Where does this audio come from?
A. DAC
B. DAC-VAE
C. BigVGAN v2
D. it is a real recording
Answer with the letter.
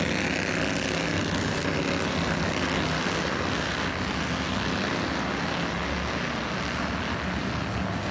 D